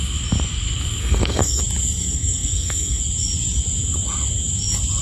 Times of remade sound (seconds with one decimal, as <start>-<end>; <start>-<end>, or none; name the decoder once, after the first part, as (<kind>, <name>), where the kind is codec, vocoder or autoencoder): 1.0-1.6 (codec, SNAC); 2.0-3.0